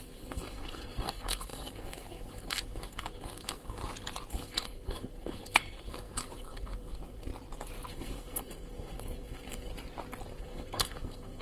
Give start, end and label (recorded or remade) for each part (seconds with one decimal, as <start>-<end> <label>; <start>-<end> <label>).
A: 0.0-3.8 remade; 3.8-4.3 recorded; 4.3-7.3 remade; 7.3-7.9 recorded; 7.9-9.7 remade; 9.7-10.4 recorded; 10.4-11.4 remade